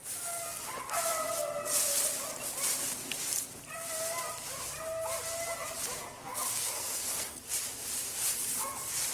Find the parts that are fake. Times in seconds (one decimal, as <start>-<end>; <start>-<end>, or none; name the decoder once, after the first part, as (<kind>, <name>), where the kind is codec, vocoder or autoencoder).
6.2-7.4 (codec, SNAC)